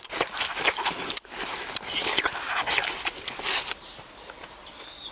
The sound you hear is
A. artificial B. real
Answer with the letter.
B